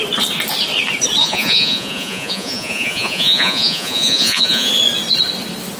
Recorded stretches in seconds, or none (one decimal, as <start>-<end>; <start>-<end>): 0.0-1.2; 4.7-5.8